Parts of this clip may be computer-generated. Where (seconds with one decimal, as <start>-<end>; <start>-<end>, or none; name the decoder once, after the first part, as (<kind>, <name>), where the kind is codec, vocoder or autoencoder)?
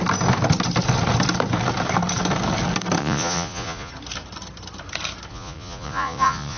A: 3.0-3.9 (vocoder, Vocos); 5.3-6.6